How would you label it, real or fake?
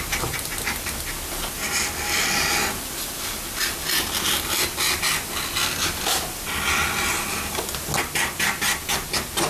real